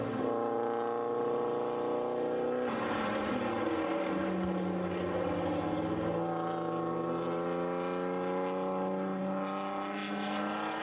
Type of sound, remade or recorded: recorded